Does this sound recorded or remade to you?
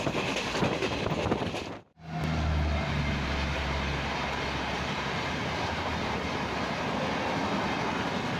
recorded